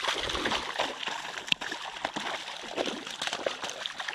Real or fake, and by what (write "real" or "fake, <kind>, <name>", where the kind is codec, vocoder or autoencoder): fake, vocoder, BigVGAN v2